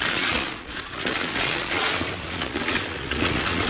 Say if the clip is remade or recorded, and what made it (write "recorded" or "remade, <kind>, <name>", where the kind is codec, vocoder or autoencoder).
remade, vocoder, Vocos